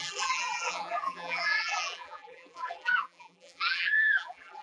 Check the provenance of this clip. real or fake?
fake